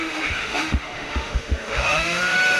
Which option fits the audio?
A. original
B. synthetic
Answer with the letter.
B